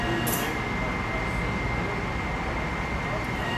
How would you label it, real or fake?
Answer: real